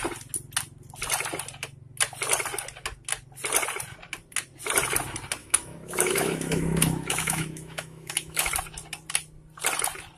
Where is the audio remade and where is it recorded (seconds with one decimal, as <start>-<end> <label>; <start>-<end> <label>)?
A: 0.0-5.4 recorded; 5.4-8.5 remade; 8.5-10.2 recorded